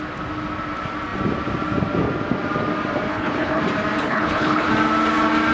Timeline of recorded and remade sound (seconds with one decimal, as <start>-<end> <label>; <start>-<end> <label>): 0.0-3.1 recorded; 3.1-3.6 remade; 3.6-4.0 recorded; 4.0-4.7 remade; 4.7-5.5 recorded